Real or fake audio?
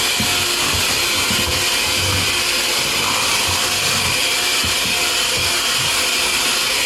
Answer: real